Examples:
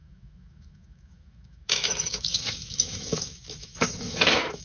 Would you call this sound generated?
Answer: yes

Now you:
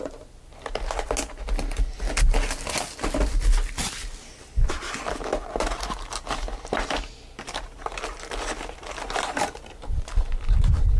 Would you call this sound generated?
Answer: no